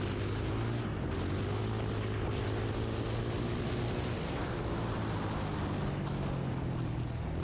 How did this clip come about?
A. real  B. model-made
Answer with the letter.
A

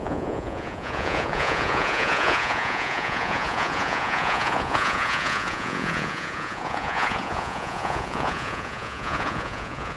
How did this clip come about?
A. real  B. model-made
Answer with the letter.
B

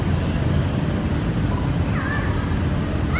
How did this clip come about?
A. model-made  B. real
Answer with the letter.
B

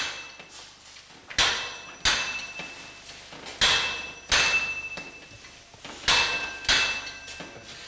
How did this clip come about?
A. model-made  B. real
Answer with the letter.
B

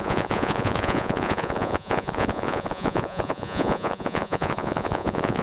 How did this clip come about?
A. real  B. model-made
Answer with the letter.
B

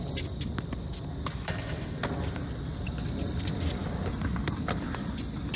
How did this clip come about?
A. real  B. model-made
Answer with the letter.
A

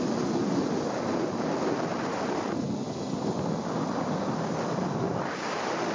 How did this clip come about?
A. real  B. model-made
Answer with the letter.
A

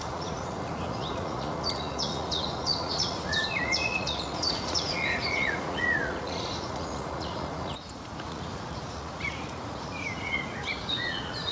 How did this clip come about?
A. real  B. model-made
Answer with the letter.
B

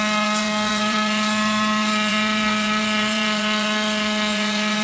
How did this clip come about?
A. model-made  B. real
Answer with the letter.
A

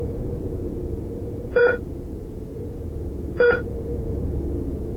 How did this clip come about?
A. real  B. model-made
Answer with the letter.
B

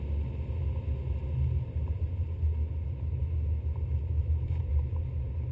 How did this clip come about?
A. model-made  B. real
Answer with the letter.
B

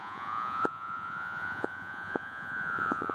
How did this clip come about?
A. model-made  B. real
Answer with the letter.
A